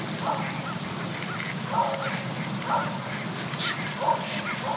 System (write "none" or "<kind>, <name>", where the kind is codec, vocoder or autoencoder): none